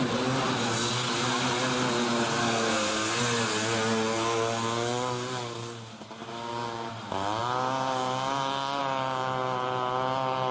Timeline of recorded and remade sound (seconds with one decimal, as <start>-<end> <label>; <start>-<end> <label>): 0.0-2.4 recorded; 2.4-3.2 remade; 3.2-10.5 recorded